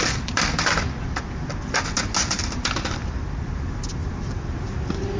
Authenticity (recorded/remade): recorded